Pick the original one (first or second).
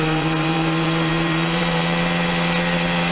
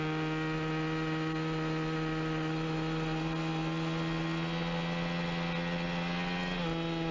second